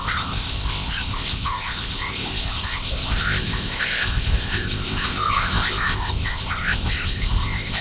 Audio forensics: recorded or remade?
remade